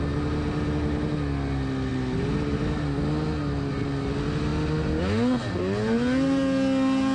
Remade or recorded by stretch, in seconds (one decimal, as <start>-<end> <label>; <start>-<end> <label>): 0.0-7.1 recorded